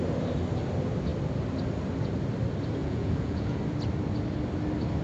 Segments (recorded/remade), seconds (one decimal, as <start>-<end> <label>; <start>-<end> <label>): 0.0-2.8 recorded; 2.8-3.6 remade; 3.6-5.0 recorded